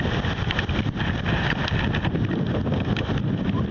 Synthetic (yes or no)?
no